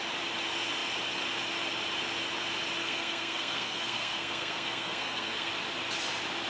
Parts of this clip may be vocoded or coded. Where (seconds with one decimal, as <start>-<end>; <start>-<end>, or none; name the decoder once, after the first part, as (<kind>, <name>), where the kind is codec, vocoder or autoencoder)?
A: 2.8-5.5 (codec, SNAC)